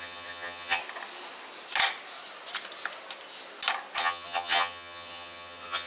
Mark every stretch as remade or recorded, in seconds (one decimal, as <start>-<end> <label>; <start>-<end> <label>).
0.0-0.8 remade; 0.8-4.0 recorded; 4.0-5.9 remade